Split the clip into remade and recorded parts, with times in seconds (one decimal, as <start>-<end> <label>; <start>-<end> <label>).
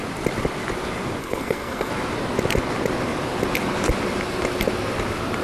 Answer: 0.0-1.2 recorded; 1.2-1.9 remade; 1.9-5.4 recorded